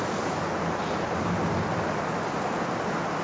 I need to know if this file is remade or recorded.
recorded